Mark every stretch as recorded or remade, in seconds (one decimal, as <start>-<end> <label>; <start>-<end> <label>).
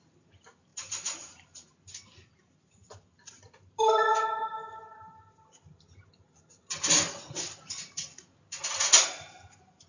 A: 0.0-9.9 recorded